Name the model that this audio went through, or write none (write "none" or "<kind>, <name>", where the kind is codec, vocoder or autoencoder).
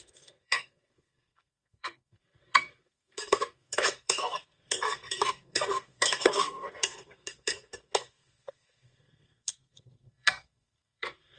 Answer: codec, SNAC